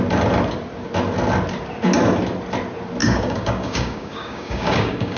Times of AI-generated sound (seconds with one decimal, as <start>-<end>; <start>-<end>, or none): 3.0-5.2